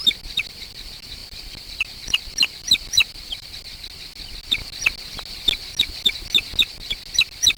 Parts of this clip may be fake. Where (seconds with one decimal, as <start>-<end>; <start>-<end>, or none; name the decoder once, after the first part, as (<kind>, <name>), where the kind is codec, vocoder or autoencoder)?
1.2-3.6 (vocoder, BigVGAN v2)

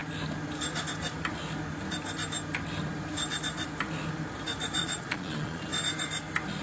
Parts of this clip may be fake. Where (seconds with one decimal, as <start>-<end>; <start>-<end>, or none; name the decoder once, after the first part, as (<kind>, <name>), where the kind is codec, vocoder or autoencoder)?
4.8-5.6 (vocoder, Vocos)

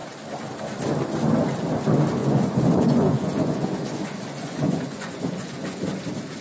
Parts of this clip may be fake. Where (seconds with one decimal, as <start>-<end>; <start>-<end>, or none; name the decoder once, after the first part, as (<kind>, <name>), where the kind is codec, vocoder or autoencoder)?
2.2-6.0 (vocoder, Vocos)

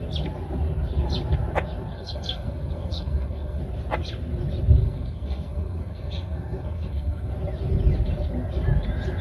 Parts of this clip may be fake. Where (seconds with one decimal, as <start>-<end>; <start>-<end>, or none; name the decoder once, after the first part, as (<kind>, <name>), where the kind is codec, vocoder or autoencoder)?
1.9-3.6 (codec, SNAC); 4.8-7.3

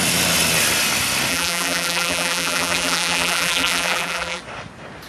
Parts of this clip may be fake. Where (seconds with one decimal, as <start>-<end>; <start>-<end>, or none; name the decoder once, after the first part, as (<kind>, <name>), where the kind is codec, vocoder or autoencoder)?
1.3-4.4 (vocoder, BigVGAN v2)

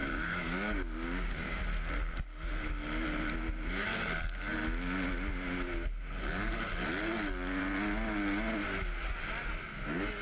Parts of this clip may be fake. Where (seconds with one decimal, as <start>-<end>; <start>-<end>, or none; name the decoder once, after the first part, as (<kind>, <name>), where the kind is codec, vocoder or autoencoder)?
0.0-1.6 (codec, DAC)